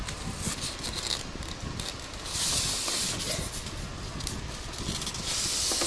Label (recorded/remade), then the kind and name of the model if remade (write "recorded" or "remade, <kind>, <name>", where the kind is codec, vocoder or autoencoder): recorded